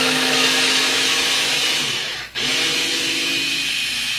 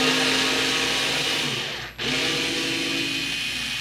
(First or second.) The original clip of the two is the second